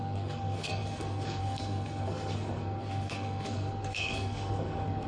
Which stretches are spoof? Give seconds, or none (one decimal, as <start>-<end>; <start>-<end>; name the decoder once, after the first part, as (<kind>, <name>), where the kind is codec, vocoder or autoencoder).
0.0-5.1 (codec, SNAC)